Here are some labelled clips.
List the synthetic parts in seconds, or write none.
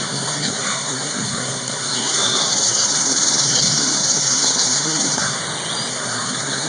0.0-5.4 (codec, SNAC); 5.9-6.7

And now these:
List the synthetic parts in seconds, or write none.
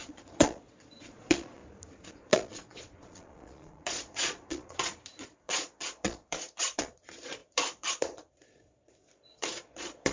0.0-1.6 (vocoder, Vocos); 2.1-10.1